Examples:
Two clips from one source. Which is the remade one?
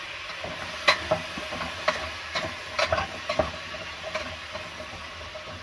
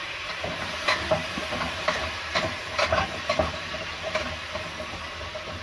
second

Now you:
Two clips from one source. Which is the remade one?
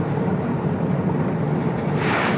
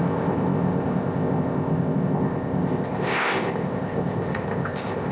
second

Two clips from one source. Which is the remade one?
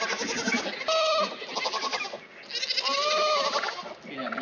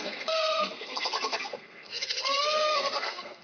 second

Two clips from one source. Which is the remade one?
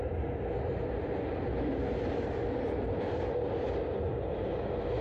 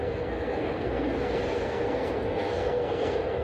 second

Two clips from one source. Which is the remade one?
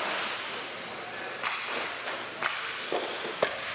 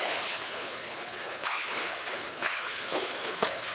second